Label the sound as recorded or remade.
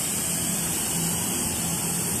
recorded